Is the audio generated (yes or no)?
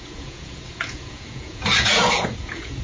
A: yes